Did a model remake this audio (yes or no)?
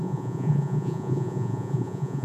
yes